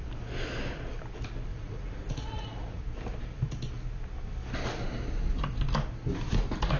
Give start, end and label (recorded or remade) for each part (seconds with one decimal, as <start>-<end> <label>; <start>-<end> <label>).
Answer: 0.0-1.5 recorded; 1.5-2.8 remade; 2.8-6.8 recorded